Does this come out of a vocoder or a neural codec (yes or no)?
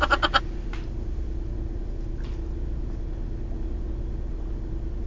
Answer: no